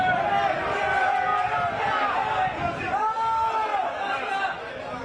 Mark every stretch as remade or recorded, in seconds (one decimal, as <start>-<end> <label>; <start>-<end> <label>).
0.0-5.0 recorded